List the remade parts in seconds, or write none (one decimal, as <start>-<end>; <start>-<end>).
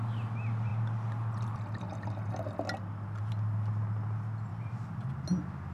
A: 4.5-5.1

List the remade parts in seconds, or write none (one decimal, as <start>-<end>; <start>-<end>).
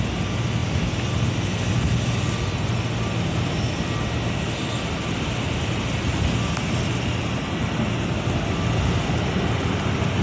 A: none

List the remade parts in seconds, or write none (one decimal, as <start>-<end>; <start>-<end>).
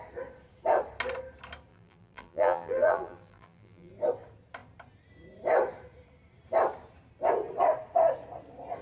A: 1.7-3.9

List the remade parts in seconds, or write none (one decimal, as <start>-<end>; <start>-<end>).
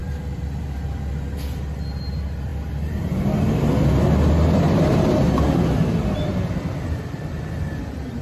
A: 0.0-0.6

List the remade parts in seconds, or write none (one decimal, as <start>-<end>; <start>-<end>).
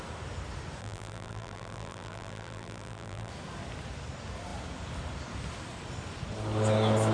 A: 0.8-3.3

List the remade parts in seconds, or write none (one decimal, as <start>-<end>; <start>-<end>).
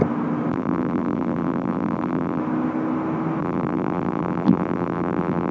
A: 0.5-2.4; 3.4-5.5